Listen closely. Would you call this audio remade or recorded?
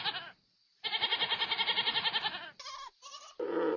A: recorded